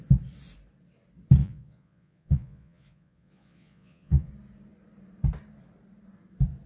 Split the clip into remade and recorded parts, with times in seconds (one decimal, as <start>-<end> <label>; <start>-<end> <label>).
0.0-1.4 recorded; 1.4-4.3 remade; 4.3-6.7 recorded